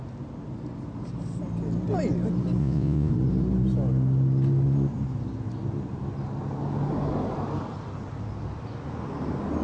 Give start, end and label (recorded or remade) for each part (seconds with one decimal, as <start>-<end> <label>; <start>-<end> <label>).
0.0-2.6 recorded; 2.6-3.1 remade; 3.1-9.6 recorded